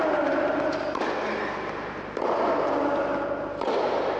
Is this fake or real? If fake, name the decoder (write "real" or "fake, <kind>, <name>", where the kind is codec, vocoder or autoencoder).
real